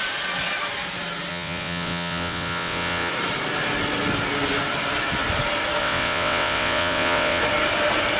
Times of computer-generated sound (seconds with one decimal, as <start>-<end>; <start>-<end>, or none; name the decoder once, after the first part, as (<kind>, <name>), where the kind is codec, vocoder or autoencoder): 1.3-3.1 (vocoder, WaveNeXt); 5.8-7.4